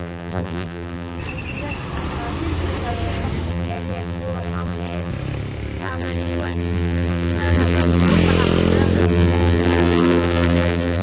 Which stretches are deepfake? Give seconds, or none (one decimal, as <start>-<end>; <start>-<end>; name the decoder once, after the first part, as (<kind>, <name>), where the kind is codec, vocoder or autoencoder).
0.0-1.2 (vocoder, BigVGAN v2); 3.5-5.1; 5.8-8.1; 9.0-11.0